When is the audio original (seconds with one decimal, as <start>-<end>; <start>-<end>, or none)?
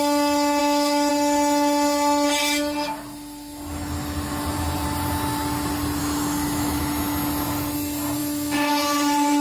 0.0-0.6; 1.1-6.0; 6.8-9.4